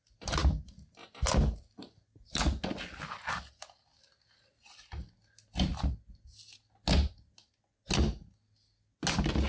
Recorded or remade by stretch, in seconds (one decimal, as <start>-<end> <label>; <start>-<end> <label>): 0.0-9.5 recorded